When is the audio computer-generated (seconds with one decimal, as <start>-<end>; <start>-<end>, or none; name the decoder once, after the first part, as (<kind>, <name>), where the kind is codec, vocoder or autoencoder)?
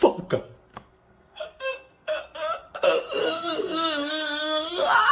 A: 0.7-2.2 (codec, SNAC); 3.2-4.6